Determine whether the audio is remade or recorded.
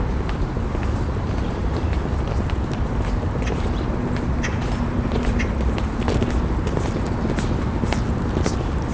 recorded